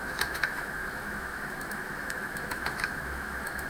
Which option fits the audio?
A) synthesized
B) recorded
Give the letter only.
A